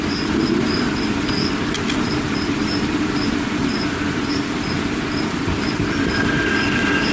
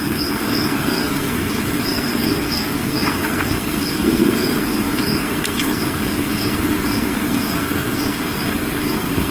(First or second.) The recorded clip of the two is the first